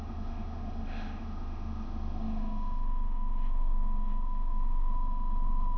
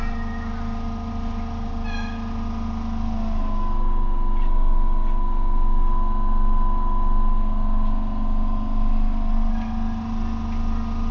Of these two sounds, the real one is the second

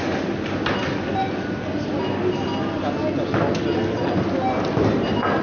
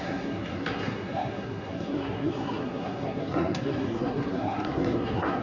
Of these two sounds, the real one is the first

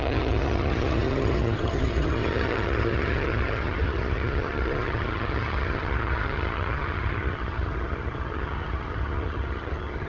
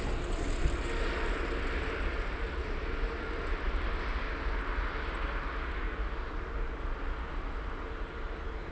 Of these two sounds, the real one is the second